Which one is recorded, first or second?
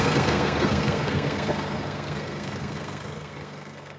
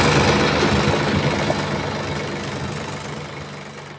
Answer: second